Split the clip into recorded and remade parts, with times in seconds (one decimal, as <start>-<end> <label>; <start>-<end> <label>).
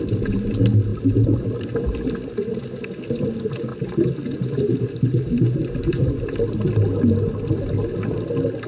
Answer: 0.0-0.9 recorded; 0.9-2.6 remade; 2.6-3.7 recorded; 3.7-6.2 remade; 6.2-8.7 recorded